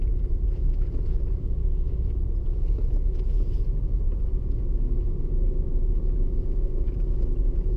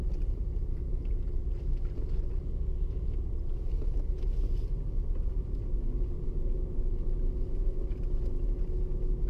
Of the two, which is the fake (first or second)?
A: first